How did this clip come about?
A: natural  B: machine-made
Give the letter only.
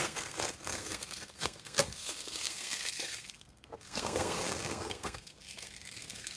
B